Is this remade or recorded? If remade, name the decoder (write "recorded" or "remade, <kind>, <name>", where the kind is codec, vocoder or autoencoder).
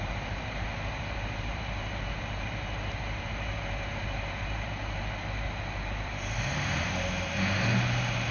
remade, vocoder, BigVGAN v2